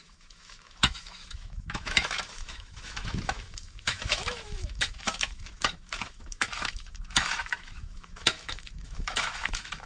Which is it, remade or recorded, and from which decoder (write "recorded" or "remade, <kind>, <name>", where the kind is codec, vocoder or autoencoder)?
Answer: remade, autoencoder, DAC-VAE